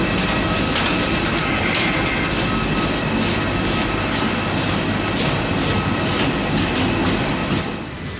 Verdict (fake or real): real